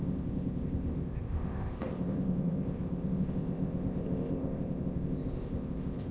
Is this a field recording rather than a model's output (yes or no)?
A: no